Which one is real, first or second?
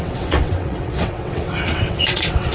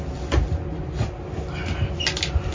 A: second